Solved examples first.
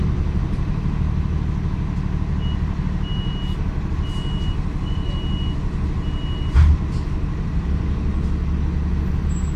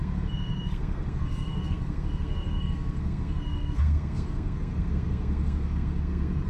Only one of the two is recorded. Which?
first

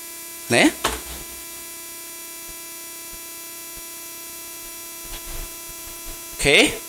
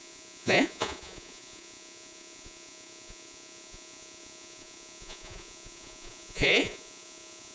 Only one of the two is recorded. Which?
first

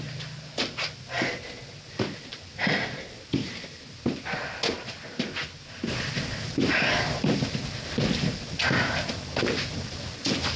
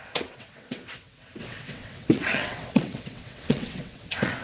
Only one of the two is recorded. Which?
first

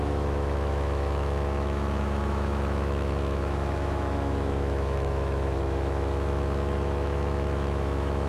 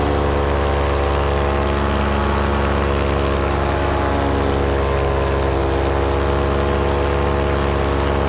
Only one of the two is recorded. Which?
second